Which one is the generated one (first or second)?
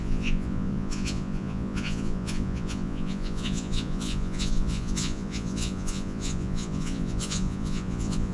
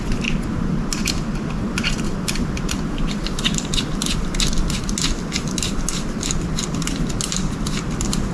first